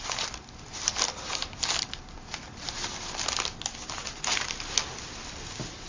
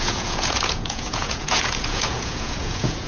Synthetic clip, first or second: second